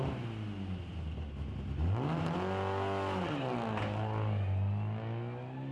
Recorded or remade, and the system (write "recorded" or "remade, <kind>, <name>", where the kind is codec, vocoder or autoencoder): recorded